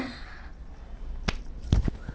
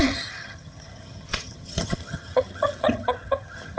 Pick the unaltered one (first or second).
first